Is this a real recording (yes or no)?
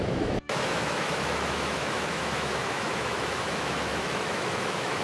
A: no